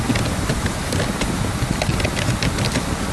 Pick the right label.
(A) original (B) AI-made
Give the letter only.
A